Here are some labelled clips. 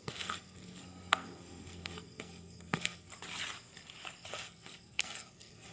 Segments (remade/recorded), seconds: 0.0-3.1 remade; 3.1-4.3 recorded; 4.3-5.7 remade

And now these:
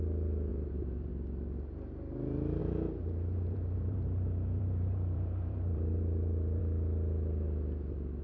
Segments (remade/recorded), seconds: 0.0-0.5 recorded; 0.5-1.1 remade; 1.1-2.6 recorded; 2.6-6.6 remade; 6.6-8.2 recorded

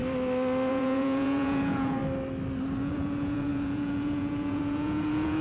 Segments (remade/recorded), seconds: 0.0-0.7 recorded; 0.7-2.0 remade; 2.0-2.8 recorded; 2.8-5.4 remade

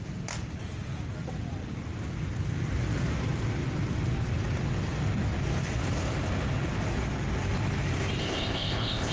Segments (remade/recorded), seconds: 0.0-8.2 recorded; 8.2-9.1 remade